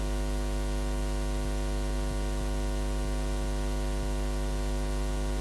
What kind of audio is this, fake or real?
real